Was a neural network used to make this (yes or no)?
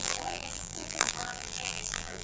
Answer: yes